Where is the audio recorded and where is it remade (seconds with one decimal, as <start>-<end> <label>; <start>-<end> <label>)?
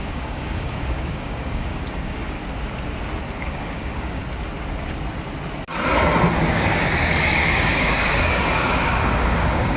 0.0-2.4 remade; 2.4-3.3 recorded; 3.3-4.2 remade; 4.2-6.5 recorded; 6.5-9.8 remade